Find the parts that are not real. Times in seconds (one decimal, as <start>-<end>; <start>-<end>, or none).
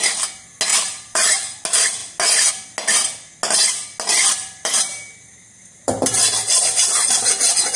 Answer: 0.7-1.6; 4.4-6.1